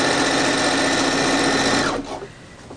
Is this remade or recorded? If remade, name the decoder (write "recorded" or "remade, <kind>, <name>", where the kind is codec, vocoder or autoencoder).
recorded